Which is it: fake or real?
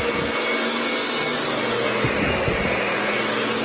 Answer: real